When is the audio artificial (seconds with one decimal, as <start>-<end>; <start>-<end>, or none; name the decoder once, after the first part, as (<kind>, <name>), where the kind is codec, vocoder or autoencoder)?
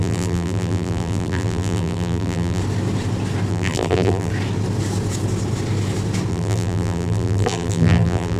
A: 0.0-2.6 (vocoder, BigVGAN v2); 3.5-4.3; 6.3-8.4